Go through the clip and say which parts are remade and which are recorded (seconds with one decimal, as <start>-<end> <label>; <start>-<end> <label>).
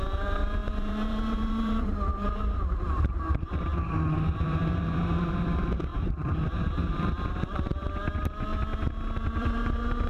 0.0-3.7 remade; 3.7-4.3 recorded; 4.3-8.5 remade; 8.5-9.4 recorded; 9.4-10.1 remade